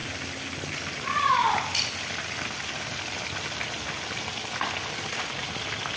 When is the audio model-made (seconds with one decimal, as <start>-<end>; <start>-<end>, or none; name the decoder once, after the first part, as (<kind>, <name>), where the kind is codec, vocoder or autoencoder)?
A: none